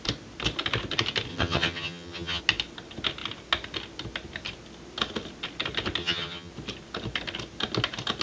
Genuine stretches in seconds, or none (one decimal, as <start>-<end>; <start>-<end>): 0.0-1.3; 2.4-6.0; 6.5-8.2